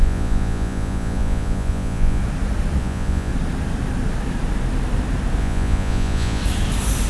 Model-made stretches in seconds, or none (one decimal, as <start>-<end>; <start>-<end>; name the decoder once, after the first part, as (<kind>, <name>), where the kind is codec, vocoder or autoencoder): 0.0-2.2 (vocoder, Vocos); 2.8-3.3; 5.4-6.4